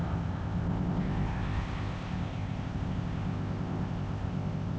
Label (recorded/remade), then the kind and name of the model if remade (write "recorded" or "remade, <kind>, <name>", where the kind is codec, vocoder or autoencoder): remade, codec, ZipCodec